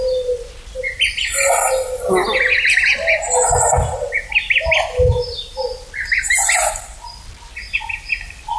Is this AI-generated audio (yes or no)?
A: no